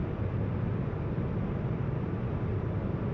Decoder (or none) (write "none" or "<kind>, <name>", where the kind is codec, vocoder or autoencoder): none